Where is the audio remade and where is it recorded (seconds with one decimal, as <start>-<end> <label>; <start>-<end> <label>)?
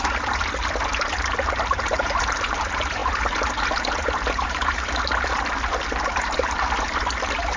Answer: 0.0-7.6 remade